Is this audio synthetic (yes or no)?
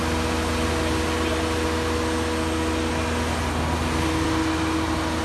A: no